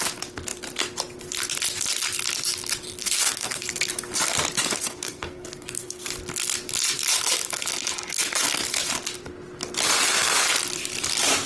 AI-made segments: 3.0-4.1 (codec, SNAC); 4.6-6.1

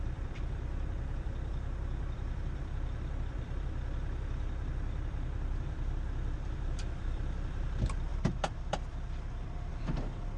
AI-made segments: 0.0-10.4 (vocoder, BigVGAN v2)

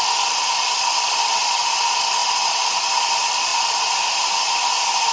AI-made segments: none

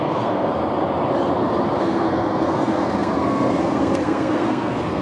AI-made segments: 0.0-0.6 (codec, SNAC); 1.8-5.0

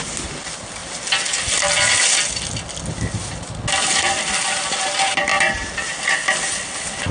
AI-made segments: none

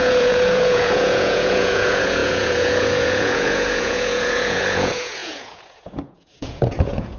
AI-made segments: 0.0-7.2 (vocoder, Vocos)

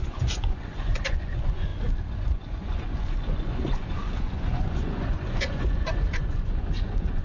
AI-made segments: 0.0-1.7 (vocoder, Vocos); 2.3-7.2

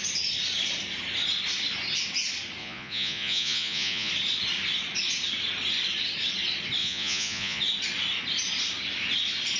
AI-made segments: 2.6-4.1 (vocoder, Vocos); 6.8-7.6